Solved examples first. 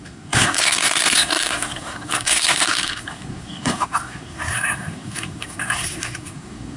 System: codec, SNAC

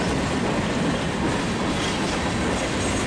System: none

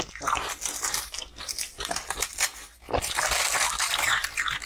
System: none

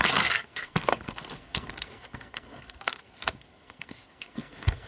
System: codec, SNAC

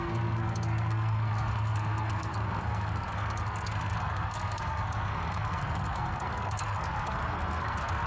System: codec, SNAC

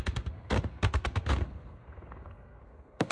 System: codec, SNAC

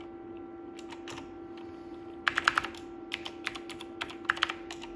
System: none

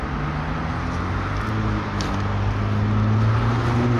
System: none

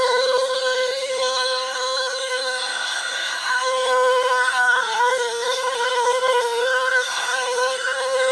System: codec, SNAC